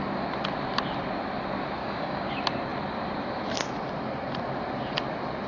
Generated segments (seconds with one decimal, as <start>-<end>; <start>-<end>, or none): 1.8-2.3